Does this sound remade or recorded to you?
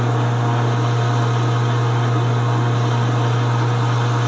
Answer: recorded